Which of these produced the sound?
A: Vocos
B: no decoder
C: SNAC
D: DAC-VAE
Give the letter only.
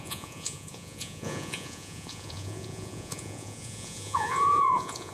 A